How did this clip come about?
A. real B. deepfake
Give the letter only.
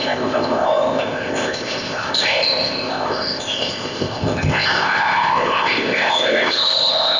B